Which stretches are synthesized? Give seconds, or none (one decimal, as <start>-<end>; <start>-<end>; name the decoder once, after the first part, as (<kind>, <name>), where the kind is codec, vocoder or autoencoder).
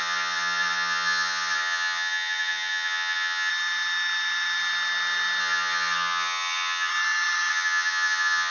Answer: 0.0-3.5 (vocoder, HiFi-GAN); 5.4-6.9; 7.5-8.5